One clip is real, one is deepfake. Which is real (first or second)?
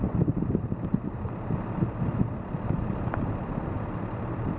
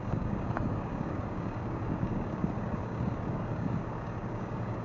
first